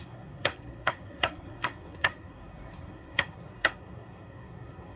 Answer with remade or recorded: remade